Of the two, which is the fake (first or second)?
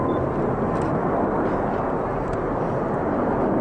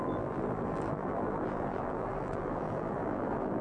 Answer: second